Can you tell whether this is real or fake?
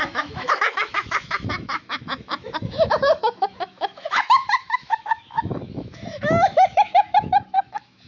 fake